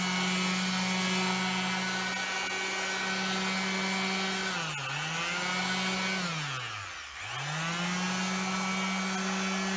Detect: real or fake real